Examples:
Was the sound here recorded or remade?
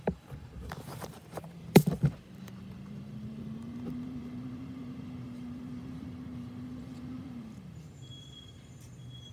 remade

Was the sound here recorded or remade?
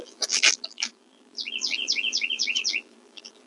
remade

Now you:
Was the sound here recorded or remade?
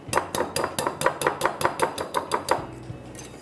recorded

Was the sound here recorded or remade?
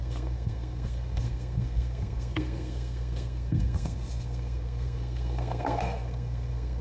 remade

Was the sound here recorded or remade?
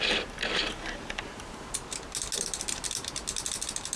recorded